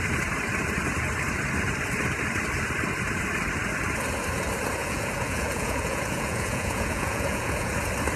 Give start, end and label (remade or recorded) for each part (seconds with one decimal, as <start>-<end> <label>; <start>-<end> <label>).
0.0-4.8 recorded; 4.8-7.7 remade; 7.7-8.2 recorded